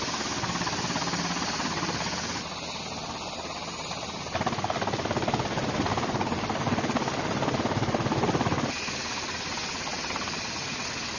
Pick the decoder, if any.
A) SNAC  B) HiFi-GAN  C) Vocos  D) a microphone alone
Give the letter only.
D